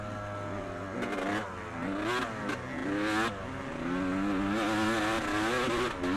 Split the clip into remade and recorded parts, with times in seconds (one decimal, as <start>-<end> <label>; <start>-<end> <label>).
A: 0.0-6.2 recorded